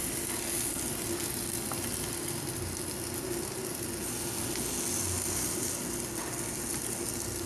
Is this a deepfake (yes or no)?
no